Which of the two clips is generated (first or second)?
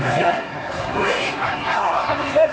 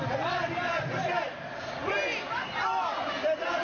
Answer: first